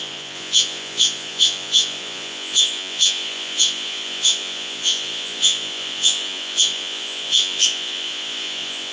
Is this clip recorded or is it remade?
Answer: remade